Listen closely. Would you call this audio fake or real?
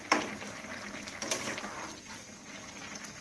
real